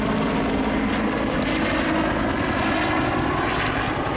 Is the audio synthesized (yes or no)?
no